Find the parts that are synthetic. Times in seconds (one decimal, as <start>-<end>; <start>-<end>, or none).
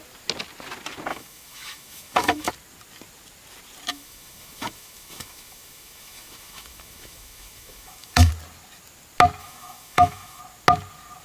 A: 1.1-2.5; 3.9-8.3; 9.4-10.4